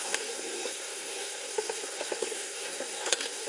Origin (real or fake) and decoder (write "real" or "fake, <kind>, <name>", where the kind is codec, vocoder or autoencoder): fake, codec, SNAC